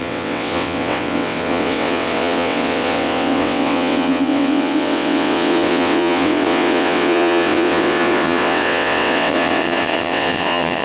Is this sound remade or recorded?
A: remade